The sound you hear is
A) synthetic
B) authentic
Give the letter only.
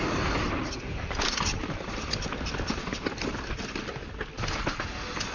B